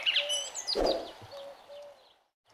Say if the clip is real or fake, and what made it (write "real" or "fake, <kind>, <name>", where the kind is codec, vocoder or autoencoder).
real